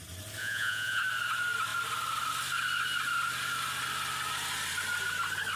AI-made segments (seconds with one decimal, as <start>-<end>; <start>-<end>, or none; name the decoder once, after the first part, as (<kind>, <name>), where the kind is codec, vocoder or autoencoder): 0.4-1.0 (vocoder, Vocos)